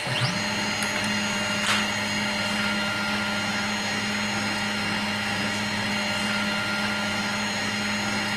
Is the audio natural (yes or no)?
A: yes